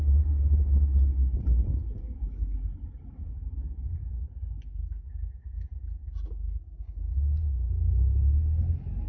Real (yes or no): yes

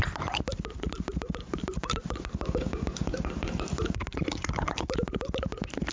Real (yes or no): yes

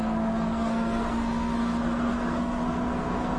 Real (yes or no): no